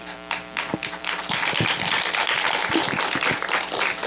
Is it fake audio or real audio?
fake